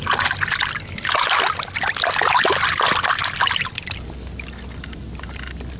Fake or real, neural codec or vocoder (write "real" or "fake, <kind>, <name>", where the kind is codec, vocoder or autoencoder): real